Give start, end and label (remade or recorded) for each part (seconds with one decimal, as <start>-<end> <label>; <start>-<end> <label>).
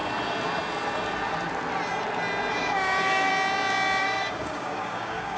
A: 0.0-2.5 recorded; 2.5-3.3 remade; 3.3-4.0 recorded; 4.0-5.4 remade